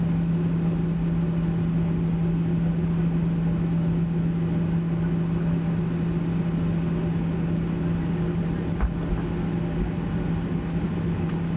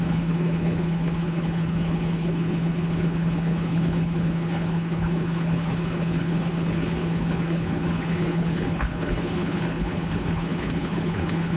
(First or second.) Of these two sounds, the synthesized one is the second